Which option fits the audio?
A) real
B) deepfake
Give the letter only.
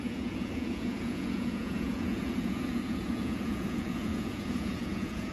B